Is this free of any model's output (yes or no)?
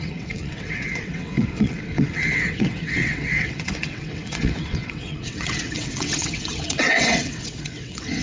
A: no